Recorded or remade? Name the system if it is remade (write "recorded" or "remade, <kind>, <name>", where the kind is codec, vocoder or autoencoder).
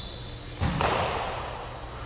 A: recorded